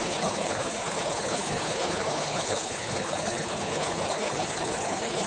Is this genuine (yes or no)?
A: no